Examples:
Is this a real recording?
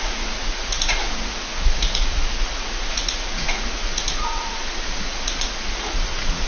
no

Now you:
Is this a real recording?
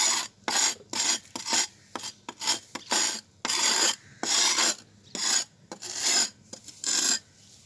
yes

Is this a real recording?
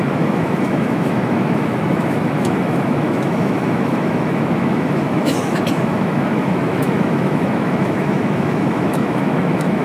no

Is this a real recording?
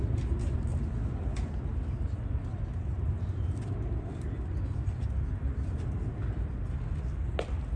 yes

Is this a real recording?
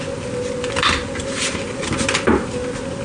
yes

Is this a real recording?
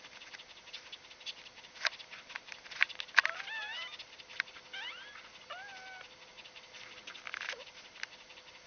yes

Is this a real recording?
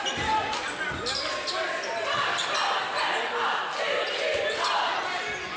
yes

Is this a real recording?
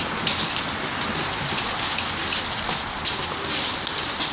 yes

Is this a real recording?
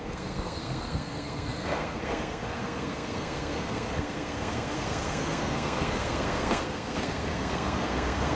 no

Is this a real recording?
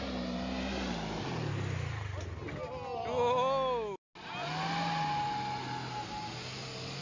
yes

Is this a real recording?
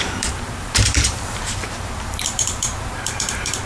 no